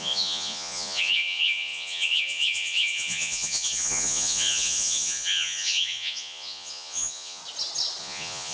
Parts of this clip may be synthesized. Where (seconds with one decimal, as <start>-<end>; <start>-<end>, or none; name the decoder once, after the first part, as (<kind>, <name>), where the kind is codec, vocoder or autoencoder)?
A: 0.0-7.4 (vocoder, Vocos); 8.0-8.5